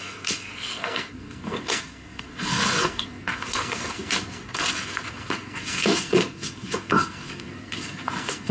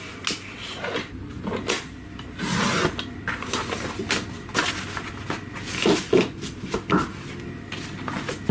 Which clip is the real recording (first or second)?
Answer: second